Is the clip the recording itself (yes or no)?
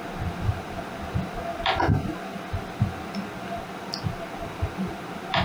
yes